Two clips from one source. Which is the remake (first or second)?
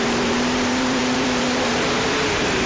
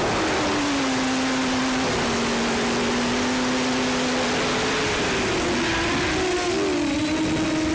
first